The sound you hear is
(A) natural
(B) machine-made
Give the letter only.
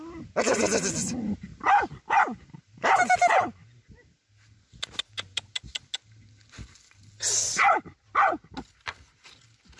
A